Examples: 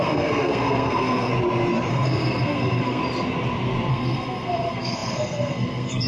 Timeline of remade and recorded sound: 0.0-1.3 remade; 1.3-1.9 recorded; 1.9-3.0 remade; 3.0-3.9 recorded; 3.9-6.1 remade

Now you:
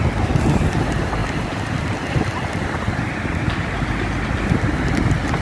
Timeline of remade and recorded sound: 0.0-1.2 recorded; 1.2-2.6 remade; 2.6-5.4 recorded

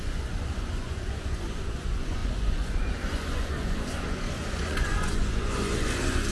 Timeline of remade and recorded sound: 0.0-6.3 remade